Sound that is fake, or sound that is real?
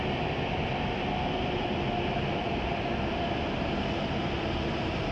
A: real